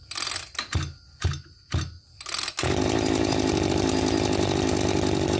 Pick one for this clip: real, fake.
real